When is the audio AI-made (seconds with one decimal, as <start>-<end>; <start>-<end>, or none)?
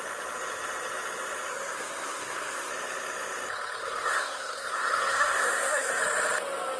1.5-2.7; 3.8-6.0